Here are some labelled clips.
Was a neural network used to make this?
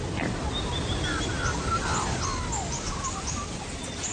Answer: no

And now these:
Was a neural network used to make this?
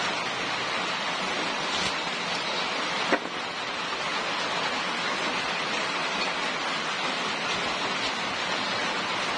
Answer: no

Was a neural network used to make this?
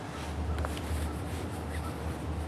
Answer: no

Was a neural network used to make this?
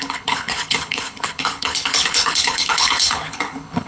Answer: yes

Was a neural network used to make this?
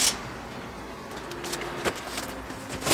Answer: no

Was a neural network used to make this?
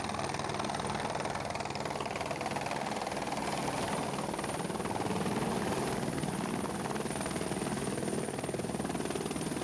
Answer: no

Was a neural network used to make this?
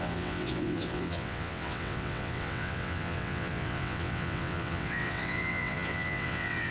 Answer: yes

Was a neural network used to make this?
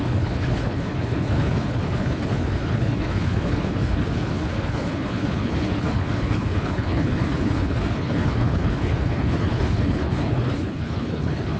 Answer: yes